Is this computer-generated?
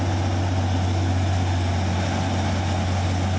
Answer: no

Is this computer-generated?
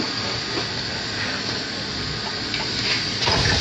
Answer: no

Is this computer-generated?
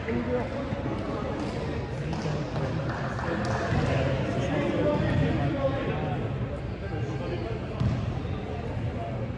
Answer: no